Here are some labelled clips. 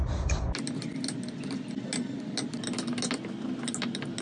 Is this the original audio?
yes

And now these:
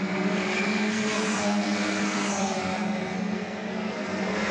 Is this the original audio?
no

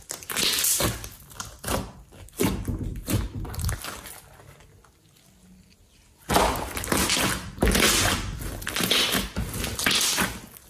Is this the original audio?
yes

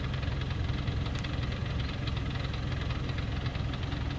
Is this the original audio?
yes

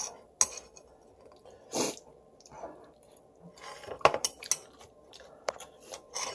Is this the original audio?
yes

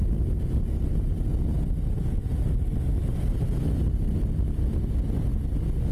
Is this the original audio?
yes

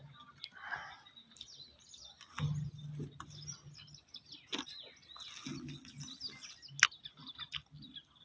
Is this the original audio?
yes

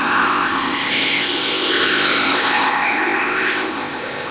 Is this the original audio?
no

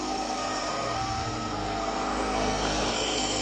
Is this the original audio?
no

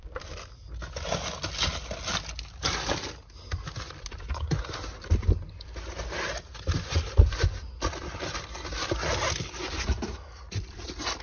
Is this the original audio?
yes